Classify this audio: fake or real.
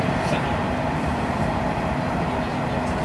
real